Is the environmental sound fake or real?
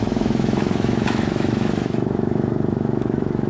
fake